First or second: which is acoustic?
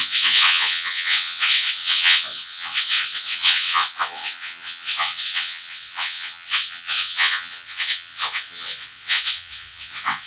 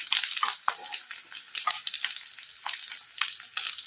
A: second